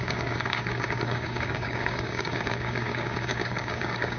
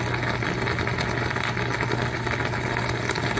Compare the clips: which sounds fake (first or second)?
first